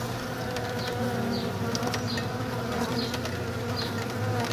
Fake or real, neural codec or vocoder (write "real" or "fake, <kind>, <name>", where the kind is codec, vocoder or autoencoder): real